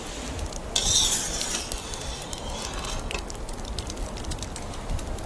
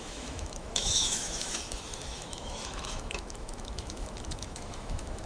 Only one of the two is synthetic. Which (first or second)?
second